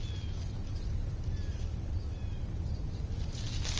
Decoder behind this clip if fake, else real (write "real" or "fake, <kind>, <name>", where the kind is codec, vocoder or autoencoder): real